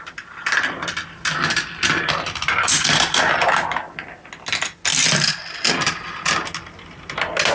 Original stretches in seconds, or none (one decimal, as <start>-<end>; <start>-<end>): 0.0-7.5